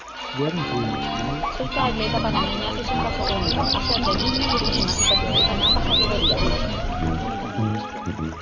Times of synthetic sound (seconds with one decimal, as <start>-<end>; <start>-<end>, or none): 5.3-6.3